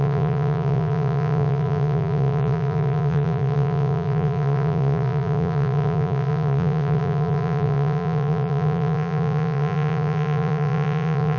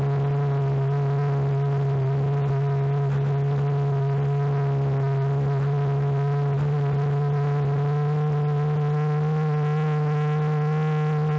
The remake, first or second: first